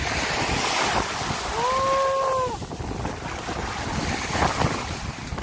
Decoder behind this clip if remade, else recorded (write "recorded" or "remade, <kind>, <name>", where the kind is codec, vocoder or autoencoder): recorded